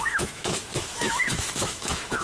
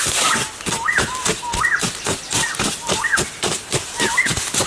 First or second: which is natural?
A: second